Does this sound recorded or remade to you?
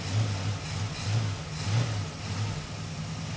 recorded